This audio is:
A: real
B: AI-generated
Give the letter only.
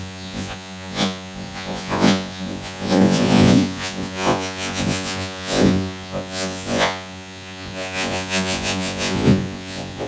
B